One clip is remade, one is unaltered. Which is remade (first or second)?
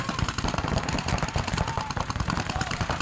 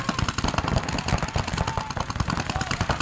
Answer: first